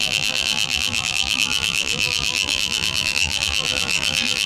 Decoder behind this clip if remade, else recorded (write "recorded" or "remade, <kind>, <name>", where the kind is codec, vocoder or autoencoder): remade, vocoder, BigVGAN v2